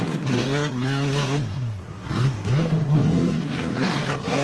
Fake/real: fake